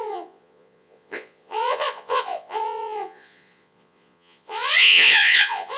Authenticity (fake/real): fake